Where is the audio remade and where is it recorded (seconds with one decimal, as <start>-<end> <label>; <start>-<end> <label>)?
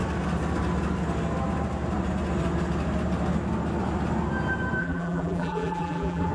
0.0-4.8 recorded; 4.8-6.3 remade